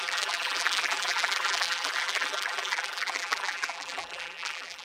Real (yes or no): no